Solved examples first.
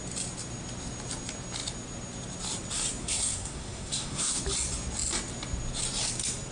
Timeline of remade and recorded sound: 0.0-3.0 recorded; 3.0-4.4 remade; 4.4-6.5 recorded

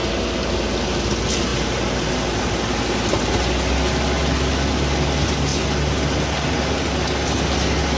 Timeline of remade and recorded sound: 0.0-8.0 recorded

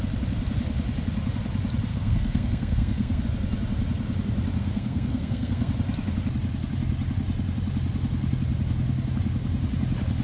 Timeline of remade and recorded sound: 0.0-1.9 recorded; 1.9-3.2 remade; 3.2-4.6 recorded; 4.6-5.7 remade; 5.7-10.2 recorded

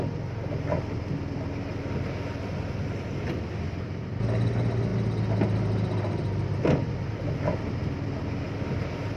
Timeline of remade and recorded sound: 0.0-9.2 recorded

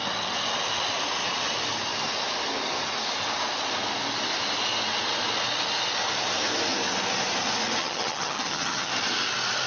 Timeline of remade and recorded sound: 0.0-7.8 recorded; 7.8-8.9 remade; 8.9-9.7 recorded